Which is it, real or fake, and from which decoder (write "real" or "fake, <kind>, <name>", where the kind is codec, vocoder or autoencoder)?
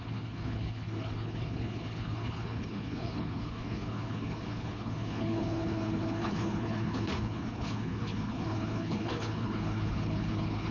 fake, codec, HILCodec